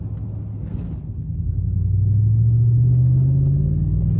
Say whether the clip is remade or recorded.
recorded